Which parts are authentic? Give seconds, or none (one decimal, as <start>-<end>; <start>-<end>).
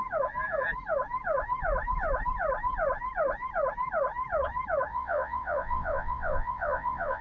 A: 0.0-4.9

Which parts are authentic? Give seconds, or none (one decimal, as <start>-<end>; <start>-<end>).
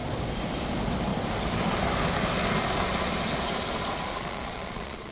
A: 0.0-4.1